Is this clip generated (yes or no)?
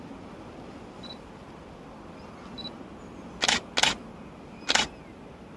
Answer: no